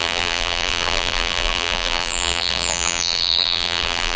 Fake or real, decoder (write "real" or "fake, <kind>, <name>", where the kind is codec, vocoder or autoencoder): fake, vocoder, BigVGAN v2